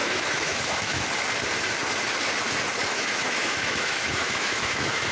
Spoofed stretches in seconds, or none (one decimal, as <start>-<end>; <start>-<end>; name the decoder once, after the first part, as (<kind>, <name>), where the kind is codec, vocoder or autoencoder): 0.0-1.0 (autoencoder, DAC-VAE); 2.8-5.1